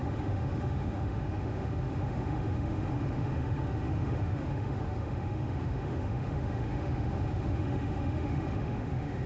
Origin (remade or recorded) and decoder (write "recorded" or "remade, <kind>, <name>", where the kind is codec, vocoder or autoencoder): remade, autoencoder, DAC-VAE